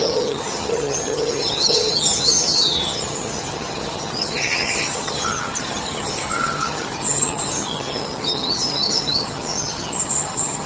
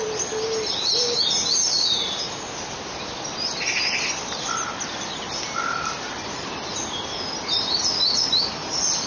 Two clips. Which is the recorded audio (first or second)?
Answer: second